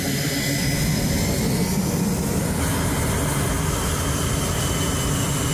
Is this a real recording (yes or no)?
yes